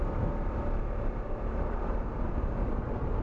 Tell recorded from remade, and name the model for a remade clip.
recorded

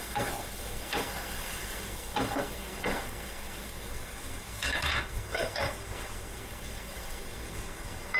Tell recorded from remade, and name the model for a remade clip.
remade, codec, SNAC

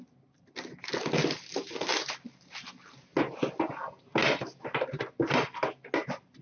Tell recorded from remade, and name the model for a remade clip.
recorded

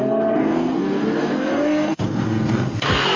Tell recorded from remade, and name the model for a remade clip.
remade, codec, SNAC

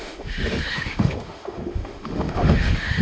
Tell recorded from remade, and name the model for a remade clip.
remade, autoencoder, DAC-VAE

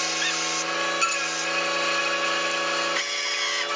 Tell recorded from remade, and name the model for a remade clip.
recorded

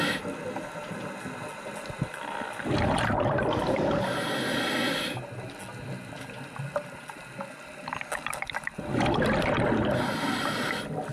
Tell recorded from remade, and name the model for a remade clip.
recorded